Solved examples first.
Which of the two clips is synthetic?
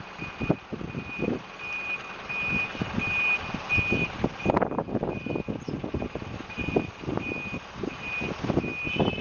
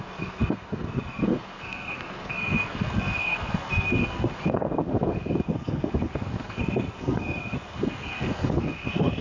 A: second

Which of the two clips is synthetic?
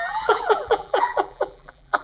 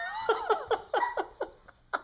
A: first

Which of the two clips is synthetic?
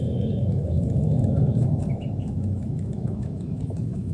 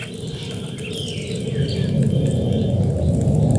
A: first